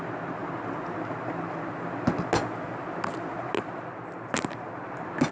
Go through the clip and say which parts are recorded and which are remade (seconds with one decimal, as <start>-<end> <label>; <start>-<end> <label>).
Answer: 0.0-5.3 recorded